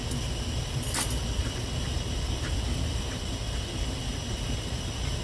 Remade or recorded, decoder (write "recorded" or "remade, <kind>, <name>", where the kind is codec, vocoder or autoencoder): recorded